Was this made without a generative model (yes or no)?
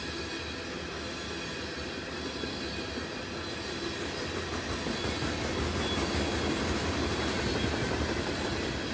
yes